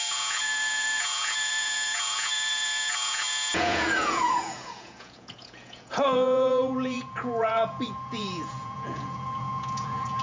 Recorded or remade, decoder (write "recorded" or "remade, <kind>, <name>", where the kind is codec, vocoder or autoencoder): remade, vocoder, Vocos